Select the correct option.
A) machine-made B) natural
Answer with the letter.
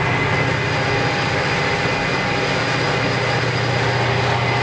B